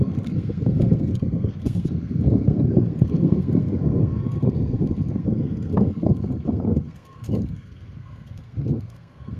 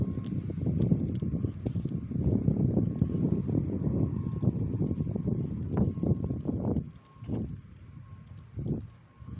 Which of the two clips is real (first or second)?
second